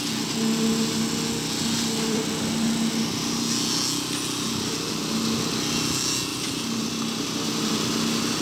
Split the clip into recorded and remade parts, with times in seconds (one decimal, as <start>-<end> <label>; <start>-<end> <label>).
0.0-8.4 recorded